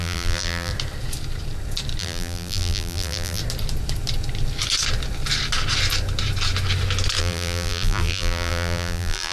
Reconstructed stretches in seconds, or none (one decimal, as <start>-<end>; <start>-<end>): 0.0-0.7; 2.0-3.4; 7.2-9.3